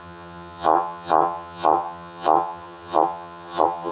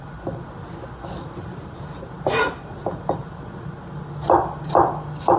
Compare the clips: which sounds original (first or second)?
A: second